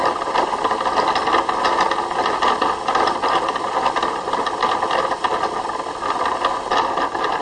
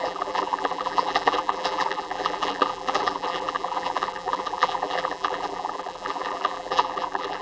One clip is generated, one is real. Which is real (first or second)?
first